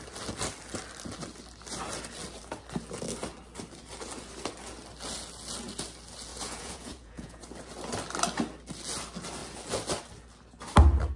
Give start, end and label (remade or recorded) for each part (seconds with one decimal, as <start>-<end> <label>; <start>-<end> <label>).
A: 0.0-6.3 recorded; 6.3-7.4 remade; 7.4-11.2 recorded